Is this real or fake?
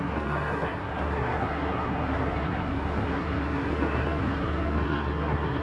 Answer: fake